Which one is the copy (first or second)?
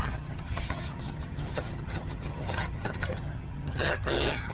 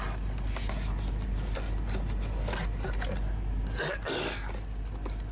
first